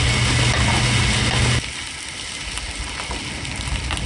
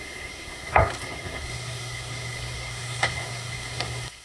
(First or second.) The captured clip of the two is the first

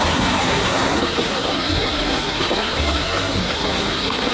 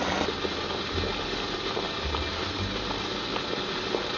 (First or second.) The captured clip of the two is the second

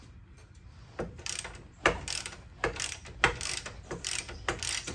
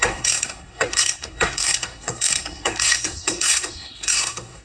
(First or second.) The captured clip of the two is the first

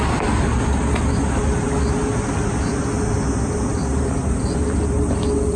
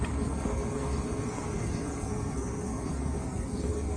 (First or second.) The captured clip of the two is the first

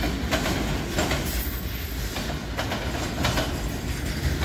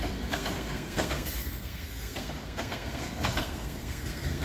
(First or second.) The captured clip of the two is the first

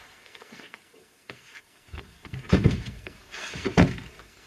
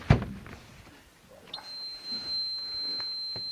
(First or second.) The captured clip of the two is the second